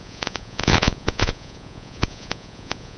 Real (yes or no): no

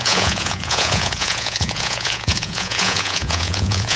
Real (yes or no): no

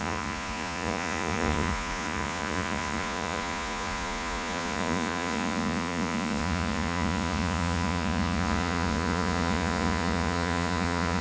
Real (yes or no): no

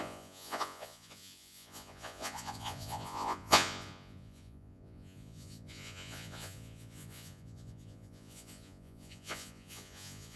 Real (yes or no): no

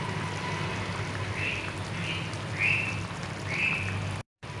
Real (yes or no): yes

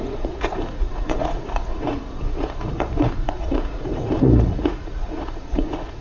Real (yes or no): no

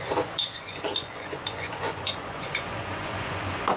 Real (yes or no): no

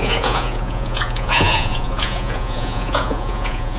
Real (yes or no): no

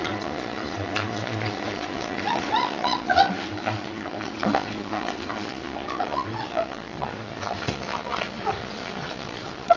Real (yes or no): no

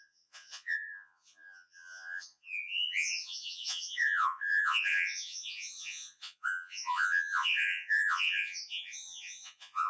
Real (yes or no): no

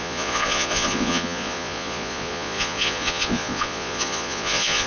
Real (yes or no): no